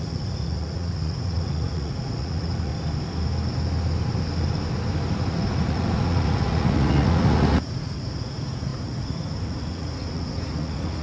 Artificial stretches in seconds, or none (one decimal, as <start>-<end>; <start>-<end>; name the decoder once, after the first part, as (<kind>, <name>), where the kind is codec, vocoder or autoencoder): 0.0-2.7 (vocoder, Vocos); 5.1-11.0